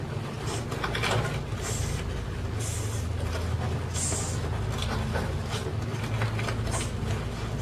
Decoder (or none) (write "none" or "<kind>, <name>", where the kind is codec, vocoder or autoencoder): none